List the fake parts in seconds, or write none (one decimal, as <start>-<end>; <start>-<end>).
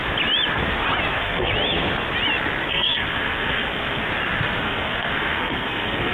1.1-1.5; 2.7-4.0; 4.6-6.1